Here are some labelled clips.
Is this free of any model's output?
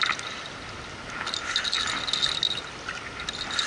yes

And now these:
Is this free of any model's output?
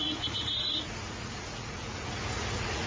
no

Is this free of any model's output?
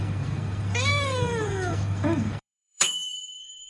no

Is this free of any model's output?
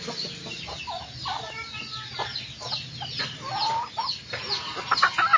yes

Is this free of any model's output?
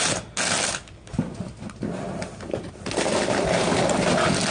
yes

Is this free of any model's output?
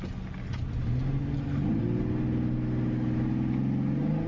yes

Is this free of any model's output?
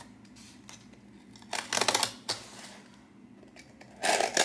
yes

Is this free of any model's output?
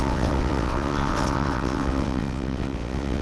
no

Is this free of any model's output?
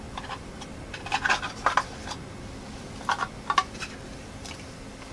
yes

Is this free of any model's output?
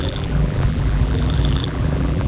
no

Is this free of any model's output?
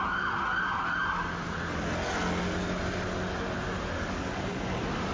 yes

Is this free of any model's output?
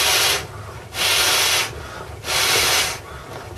yes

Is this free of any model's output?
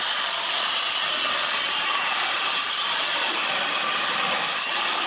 yes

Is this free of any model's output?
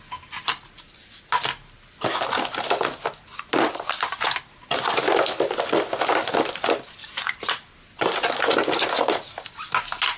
yes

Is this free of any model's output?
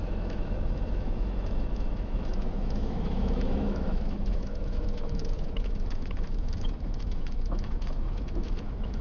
no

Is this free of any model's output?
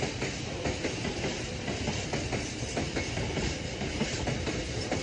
yes